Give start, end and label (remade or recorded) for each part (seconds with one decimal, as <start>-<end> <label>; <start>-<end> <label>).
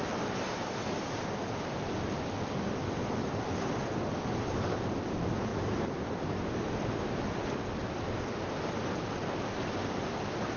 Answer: 0.0-10.6 recorded